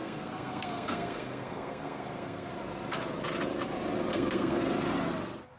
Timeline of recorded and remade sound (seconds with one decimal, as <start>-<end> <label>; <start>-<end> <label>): 0.0-2.5 remade; 2.5-4.1 recorded; 4.1-4.6 remade; 4.6-5.6 recorded